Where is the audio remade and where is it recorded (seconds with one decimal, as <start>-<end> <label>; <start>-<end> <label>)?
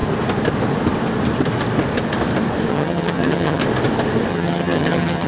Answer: 0.0-2.7 recorded; 2.7-3.6 remade; 3.6-4.3 recorded; 4.3-5.3 remade